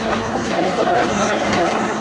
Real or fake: fake